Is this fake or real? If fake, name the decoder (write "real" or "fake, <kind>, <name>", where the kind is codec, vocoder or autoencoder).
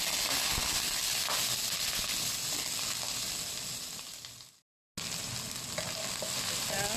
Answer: real